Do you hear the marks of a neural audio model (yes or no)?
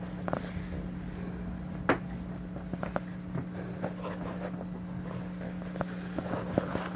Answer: no